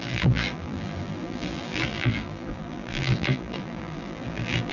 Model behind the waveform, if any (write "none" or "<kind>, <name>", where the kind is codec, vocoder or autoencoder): vocoder, BigVGAN v2